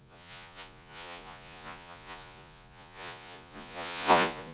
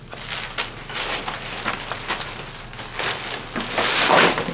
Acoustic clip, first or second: second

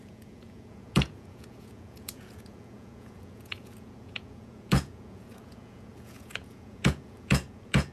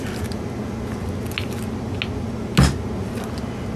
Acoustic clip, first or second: second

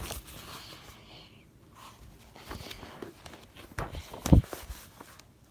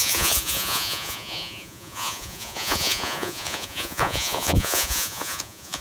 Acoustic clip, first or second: first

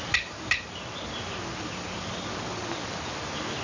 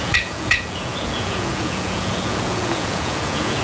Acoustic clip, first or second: first